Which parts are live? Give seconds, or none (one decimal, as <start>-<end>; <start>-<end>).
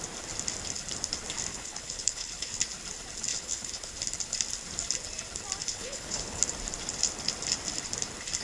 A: 0.0-1.5; 2.5-3.3; 3.9-5.6; 6.4-8.4